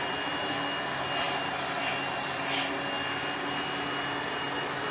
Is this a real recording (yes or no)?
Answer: yes